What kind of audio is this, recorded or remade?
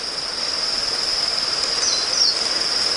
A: recorded